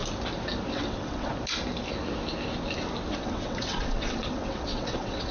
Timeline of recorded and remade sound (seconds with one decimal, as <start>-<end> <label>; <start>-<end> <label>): 0.0-0.7 recorded; 0.7-1.3 remade; 1.3-3.1 recorded; 3.1-5.3 remade